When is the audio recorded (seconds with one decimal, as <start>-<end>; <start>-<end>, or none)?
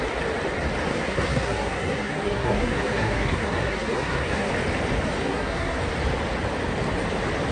0.0-0.9; 4.5-5.2; 5.8-7.5